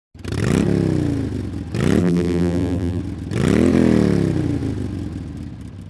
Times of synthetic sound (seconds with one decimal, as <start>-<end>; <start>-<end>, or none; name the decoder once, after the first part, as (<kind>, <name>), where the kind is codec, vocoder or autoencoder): 2.0-3.0 (vocoder, BigVGAN v2)